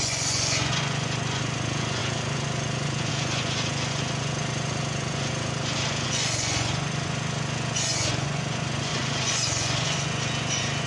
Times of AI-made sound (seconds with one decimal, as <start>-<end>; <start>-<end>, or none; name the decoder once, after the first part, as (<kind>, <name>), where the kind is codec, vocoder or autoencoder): 0.0-10.9 (vocoder, Vocos)

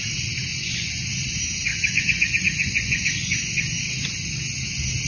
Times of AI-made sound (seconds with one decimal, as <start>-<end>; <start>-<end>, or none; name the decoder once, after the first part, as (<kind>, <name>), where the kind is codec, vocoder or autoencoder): 0.5-1.1 (vocoder, Vocos); 1.7-3.5